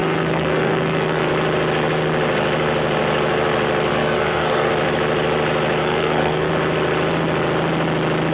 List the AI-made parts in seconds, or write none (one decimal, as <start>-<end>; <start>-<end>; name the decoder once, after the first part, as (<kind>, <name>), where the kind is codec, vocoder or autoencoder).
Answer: 0.0-1.3 (codec, SNAC); 3.9-4.7; 5.8-6.5